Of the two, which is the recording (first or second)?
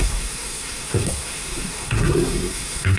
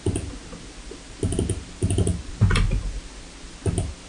second